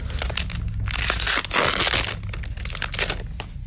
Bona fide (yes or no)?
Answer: yes